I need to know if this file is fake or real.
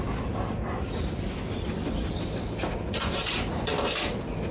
real